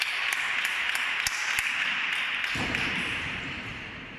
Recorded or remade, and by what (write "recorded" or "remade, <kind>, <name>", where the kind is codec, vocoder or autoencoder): remade, vocoder, BigVGAN v2